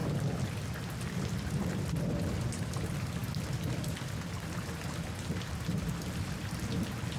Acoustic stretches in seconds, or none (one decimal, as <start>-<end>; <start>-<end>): 0.0-7.2